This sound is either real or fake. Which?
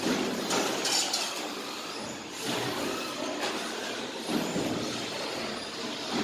real